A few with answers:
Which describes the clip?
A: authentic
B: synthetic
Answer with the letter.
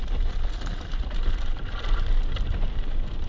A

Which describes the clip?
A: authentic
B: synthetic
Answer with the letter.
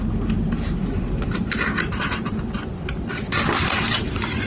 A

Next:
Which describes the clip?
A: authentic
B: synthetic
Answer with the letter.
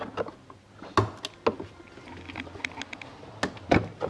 A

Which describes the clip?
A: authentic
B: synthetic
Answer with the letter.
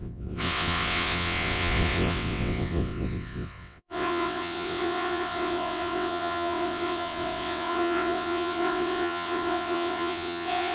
B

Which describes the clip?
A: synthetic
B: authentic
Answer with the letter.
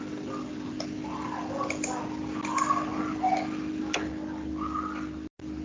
B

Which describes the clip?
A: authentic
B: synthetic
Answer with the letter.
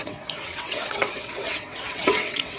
B